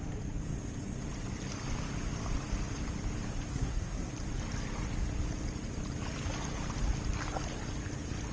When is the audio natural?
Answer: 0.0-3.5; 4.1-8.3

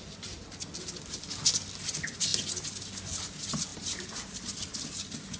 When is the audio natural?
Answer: 0.0-3.7; 4.8-5.4

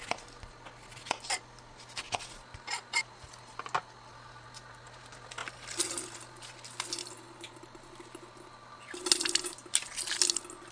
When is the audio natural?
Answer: 0.0-10.7

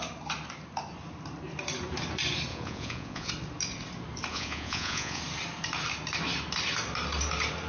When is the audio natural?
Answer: 0.0-2.5; 3.3-4.3; 5.2-7.7

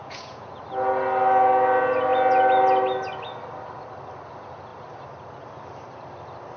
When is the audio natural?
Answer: 0.6-6.6